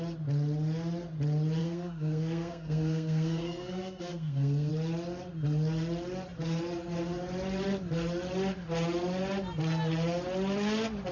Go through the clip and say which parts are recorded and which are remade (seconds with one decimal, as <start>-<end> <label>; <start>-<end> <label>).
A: 0.0-1.6 recorded; 1.6-4.7 remade; 4.7-11.1 recorded